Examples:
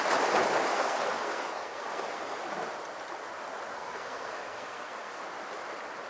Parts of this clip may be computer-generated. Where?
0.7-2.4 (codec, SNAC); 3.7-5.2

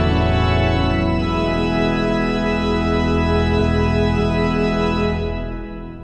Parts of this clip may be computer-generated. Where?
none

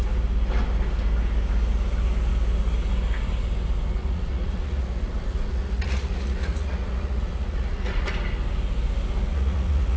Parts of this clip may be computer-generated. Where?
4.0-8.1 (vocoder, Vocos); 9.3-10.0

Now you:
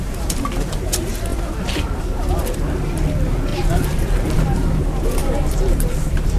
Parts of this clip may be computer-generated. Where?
3.5-4.8 (vocoder, BigVGAN v2); 5.2-6.4

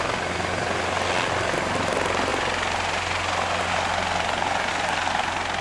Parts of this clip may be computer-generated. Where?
none

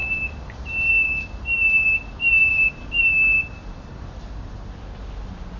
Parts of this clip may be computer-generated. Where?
0.0-0.9 (vocoder, BigVGAN v2); 2.5-4.0